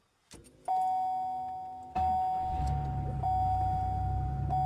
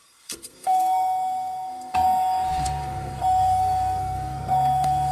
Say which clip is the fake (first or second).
second